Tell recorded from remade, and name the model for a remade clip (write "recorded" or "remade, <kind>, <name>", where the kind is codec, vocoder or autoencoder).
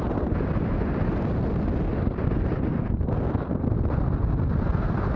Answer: recorded